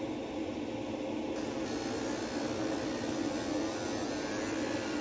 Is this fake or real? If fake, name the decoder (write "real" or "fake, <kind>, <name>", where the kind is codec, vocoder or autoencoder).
real